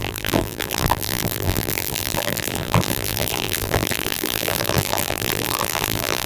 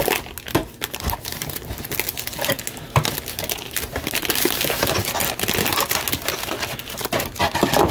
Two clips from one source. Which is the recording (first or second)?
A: second